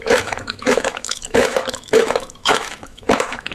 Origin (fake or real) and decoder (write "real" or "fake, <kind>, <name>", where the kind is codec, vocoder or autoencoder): fake, autoencoder, DAC-VAE